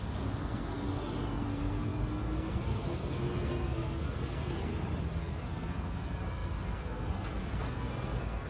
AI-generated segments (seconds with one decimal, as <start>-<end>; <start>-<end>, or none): 0.0-4.7; 5.2-8.5